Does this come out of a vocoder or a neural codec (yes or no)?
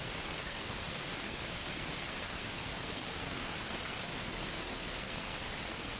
yes